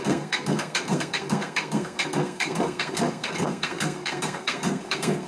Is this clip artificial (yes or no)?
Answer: yes